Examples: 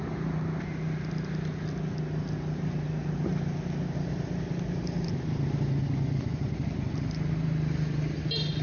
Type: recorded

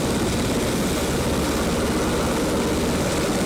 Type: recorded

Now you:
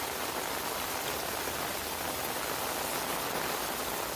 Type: recorded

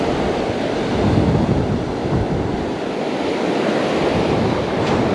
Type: recorded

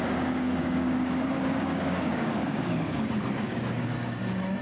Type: remade